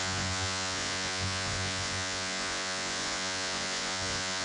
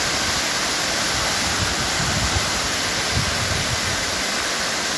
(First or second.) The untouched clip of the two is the second